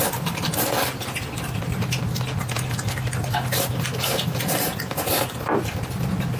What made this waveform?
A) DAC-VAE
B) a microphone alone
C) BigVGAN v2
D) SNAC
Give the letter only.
B